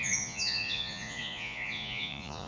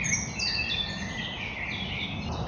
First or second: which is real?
second